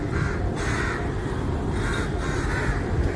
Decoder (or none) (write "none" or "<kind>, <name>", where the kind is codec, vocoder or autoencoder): vocoder, BigVGAN v2